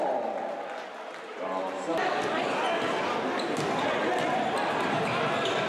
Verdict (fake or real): real